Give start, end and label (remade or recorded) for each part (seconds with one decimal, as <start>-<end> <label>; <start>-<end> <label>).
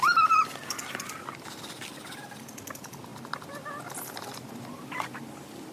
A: 0.0-5.7 recorded